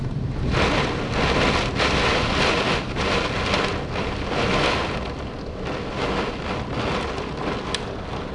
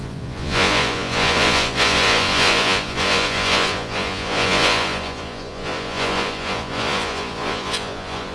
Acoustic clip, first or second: first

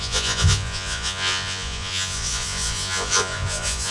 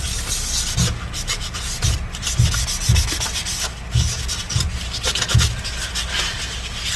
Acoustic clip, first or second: second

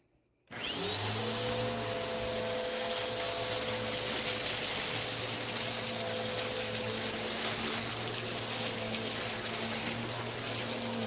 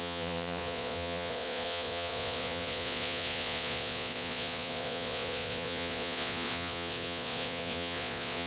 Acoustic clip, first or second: first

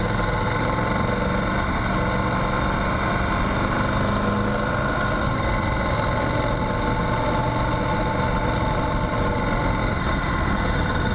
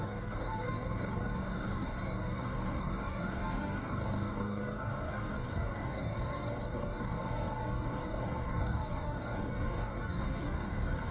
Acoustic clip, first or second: first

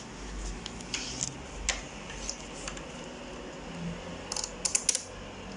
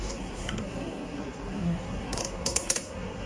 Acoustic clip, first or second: first